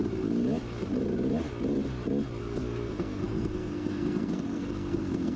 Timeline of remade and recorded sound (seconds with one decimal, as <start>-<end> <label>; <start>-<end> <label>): 0.0-2.4 recorded; 2.4-5.4 remade